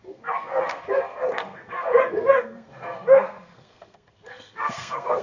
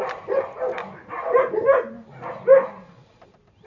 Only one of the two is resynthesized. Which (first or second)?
first